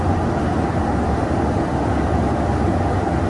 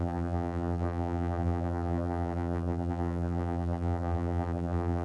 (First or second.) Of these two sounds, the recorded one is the first